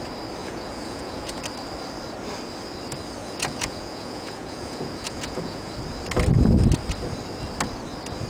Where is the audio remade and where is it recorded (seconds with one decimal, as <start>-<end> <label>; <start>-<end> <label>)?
0.0-0.4 recorded; 0.4-1.4 remade; 1.4-3.2 recorded; 3.2-5.7 remade; 5.7-8.3 recorded